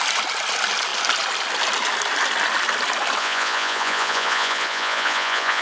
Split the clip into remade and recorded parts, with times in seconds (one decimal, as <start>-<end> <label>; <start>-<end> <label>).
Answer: 0.0-3.2 recorded; 3.2-5.6 remade